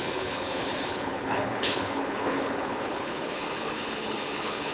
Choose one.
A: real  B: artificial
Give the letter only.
B